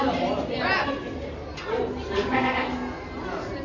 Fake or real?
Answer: real